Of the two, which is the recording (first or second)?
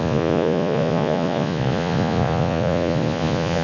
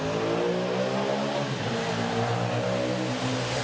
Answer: second